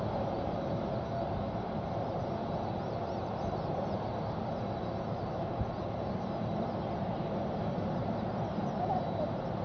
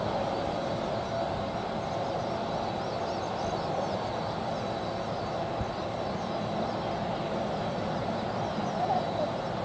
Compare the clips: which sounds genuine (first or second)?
second